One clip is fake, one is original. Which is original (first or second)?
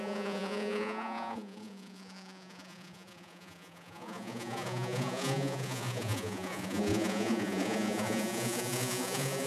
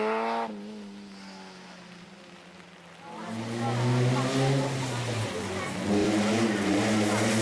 second